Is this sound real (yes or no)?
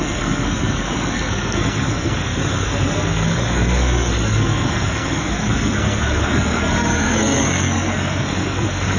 no